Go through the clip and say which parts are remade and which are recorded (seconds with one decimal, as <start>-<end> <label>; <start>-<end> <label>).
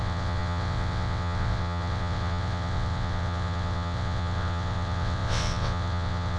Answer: 0.0-6.4 remade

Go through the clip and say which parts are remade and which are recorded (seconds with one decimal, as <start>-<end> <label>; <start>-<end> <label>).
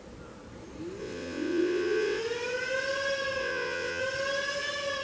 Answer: 0.0-1.0 recorded; 1.0-2.2 remade; 2.2-3.4 recorded; 3.4-4.0 remade; 4.0-5.0 recorded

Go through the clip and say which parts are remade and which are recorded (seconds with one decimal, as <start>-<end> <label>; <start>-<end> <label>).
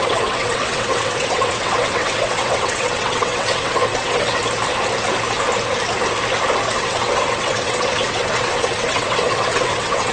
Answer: 0.0-4.4 remade; 4.4-6.7 recorded; 6.7-10.1 remade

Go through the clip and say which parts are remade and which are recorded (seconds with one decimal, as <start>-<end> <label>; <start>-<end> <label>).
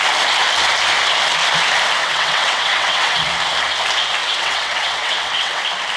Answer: 0.0-2.0 recorded; 2.0-3.3 remade; 3.3-4.2 recorded; 4.2-5.6 remade; 5.6-6.0 recorded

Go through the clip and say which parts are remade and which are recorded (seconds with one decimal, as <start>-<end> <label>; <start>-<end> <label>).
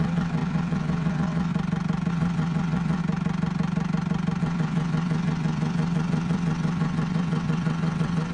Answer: 0.0-1.5 remade; 1.5-2.1 recorded; 2.1-3.0 remade; 3.0-4.4 recorded; 4.4-8.3 remade